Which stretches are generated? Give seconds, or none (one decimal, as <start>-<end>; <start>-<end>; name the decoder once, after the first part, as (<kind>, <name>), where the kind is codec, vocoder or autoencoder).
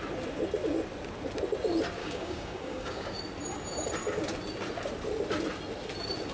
2.0-3.2 (codec, DAC)